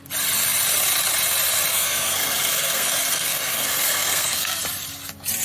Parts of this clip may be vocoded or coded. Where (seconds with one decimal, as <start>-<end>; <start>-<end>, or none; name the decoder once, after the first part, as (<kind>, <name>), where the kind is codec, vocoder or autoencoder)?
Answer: 1.7-4.6 (codec, SNAC)